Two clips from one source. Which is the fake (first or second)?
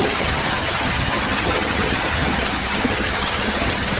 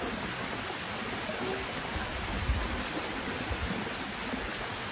first